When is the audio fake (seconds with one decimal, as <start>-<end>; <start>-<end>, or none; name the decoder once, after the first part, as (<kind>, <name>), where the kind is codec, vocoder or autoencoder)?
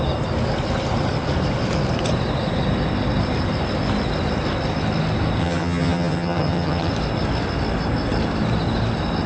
5.4-6.9 (vocoder, HiFi-GAN)